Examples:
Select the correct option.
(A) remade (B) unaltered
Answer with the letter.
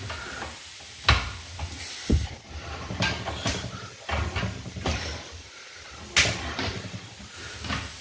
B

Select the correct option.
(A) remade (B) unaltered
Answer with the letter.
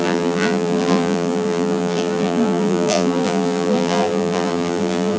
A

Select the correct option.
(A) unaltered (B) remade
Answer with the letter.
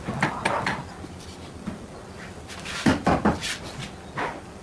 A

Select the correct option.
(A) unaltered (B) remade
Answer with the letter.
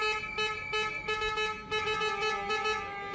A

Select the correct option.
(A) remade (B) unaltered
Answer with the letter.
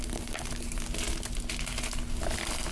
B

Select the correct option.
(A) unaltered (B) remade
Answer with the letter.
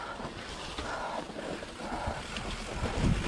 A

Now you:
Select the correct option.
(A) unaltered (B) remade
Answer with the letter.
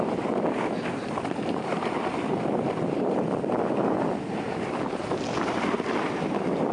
A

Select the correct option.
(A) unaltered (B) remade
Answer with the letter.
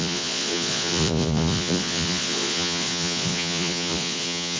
B